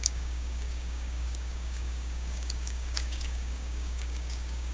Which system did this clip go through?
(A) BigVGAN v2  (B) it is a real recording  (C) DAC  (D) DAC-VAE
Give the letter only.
C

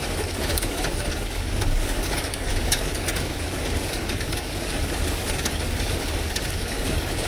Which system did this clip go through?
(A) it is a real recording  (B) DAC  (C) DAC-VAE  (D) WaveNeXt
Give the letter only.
B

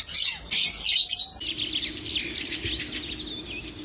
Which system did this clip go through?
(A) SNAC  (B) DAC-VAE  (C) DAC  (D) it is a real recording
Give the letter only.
D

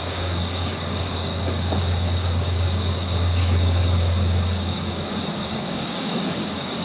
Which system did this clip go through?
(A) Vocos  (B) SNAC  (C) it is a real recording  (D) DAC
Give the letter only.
D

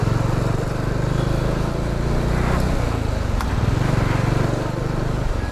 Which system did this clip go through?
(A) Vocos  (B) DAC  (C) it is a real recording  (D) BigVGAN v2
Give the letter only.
C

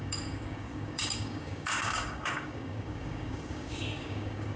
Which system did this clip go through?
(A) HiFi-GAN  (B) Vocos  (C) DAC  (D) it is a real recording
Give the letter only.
C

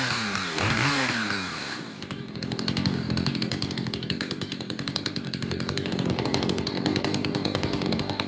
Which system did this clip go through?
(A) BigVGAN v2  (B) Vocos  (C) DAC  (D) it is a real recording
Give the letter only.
C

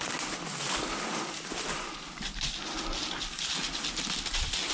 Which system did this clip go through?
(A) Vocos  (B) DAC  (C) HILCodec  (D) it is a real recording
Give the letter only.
D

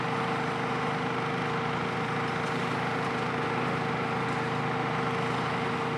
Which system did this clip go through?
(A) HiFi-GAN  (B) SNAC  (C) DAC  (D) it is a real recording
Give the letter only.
D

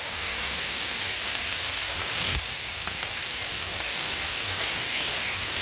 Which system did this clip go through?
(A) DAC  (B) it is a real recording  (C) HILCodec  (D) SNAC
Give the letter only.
A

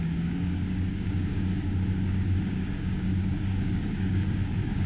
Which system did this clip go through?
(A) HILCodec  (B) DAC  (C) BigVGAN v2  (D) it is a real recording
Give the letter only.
B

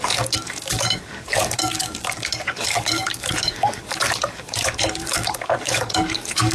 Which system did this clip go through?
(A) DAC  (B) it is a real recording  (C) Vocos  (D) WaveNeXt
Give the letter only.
A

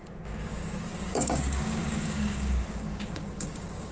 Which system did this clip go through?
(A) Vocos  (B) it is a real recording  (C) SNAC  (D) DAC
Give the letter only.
D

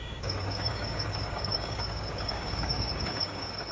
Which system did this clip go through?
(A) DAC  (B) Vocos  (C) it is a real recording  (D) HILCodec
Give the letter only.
A